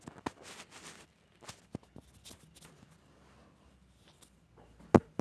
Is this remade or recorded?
recorded